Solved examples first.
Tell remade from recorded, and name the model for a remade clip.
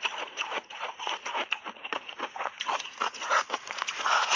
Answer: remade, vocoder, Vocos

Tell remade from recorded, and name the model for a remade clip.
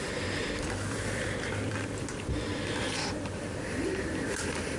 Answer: remade, vocoder, BigVGAN v2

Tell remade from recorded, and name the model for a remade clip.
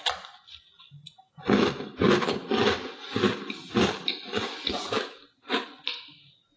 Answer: recorded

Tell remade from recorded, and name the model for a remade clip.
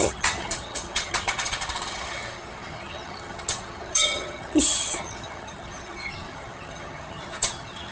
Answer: remade, vocoder, HiFi-GAN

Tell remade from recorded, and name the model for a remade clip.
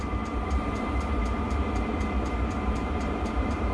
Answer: remade, vocoder, BigVGAN v2